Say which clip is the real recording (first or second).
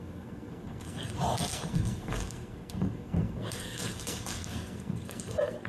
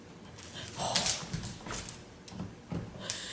second